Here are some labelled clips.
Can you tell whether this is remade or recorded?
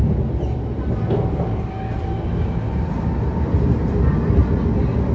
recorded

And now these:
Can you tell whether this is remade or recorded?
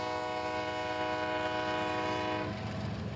recorded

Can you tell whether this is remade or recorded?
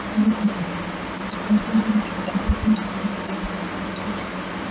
recorded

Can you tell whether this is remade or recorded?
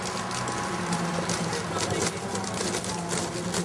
recorded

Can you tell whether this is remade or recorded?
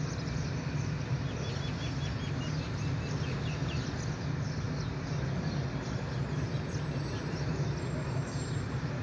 recorded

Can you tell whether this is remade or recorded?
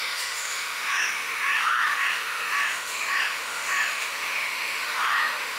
remade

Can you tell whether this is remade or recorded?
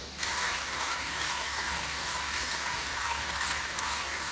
remade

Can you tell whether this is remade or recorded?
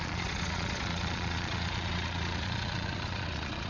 remade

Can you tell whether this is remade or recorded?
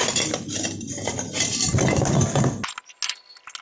recorded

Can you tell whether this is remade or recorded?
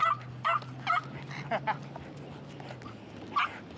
recorded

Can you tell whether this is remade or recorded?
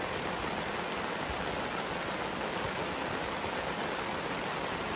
recorded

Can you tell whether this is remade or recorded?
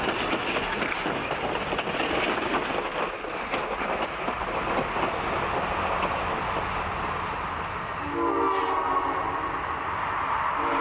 recorded